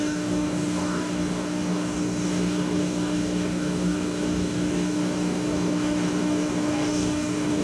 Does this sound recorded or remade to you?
remade